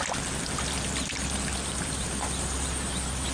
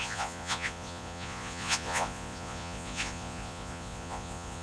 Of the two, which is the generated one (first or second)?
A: second